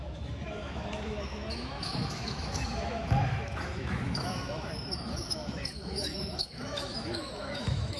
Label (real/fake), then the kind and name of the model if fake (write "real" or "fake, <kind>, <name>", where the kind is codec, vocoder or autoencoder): fake, autoencoder, DAC-VAE